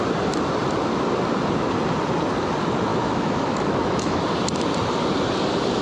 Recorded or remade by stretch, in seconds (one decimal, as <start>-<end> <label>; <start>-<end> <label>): 0.0-2.9 recorded; 2.9-4.2 remade; 4.2-5.8 recorded